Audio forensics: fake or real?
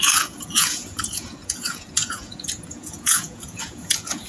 fake